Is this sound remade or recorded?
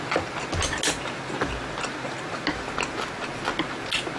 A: recorded